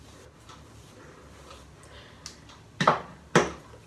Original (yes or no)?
yes